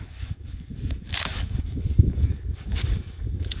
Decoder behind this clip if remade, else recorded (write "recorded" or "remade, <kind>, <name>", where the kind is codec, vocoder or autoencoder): remade, codec, DAC